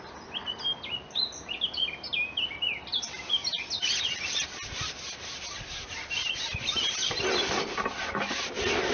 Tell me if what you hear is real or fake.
real